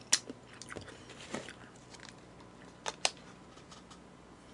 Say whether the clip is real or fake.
real